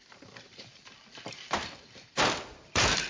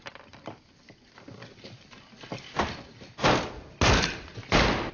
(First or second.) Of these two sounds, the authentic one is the second